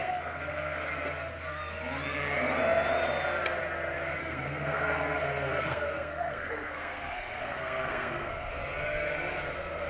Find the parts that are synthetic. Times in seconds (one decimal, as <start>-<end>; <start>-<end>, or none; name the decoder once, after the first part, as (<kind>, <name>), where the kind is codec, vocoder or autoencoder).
0.0-0.9 (codec, SNAC); 4.2-8.5